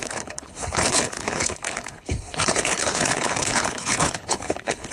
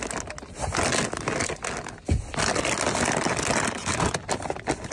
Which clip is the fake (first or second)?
first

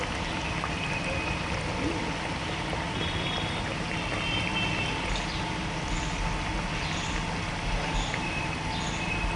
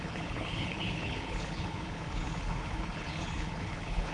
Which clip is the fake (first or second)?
second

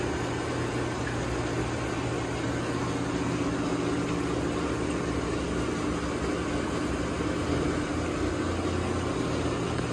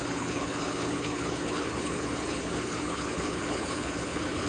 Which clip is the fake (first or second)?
second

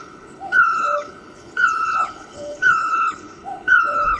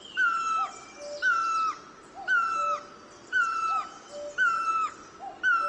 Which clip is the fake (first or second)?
first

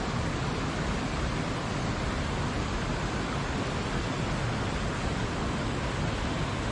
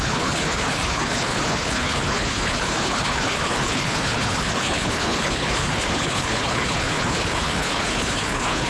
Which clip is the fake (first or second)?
second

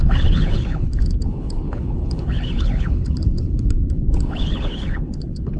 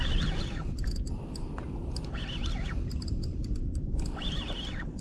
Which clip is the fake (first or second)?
first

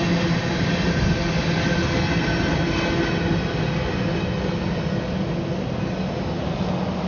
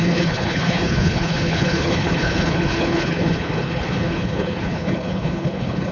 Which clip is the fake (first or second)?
second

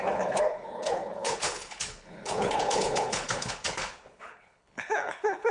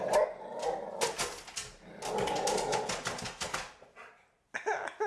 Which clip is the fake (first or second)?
first